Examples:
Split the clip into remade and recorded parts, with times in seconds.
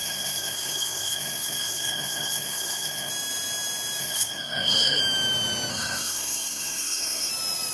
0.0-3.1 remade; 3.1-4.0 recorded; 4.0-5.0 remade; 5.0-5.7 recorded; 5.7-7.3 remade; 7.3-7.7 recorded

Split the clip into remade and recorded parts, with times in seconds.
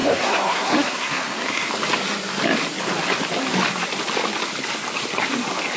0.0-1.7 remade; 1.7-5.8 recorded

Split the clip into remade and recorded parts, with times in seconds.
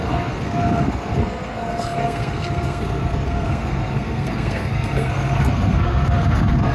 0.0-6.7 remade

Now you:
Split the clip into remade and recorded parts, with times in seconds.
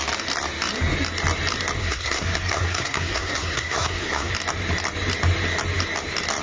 0.0-1.8 recorded; 1.8-4.3 remade; 4.3-6.4 recorded